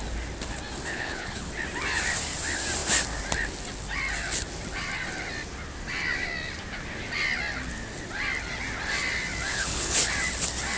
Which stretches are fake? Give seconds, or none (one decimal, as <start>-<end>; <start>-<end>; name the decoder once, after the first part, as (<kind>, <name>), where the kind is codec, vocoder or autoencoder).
0.9-1.5 (codec, HILCodec); 9.5-10.1